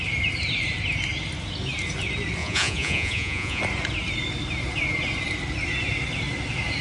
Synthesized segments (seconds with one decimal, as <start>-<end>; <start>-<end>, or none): 2.4-3.6